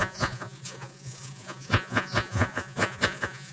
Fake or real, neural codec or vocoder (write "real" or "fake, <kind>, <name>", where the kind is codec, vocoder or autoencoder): fake, vocoder, Vocos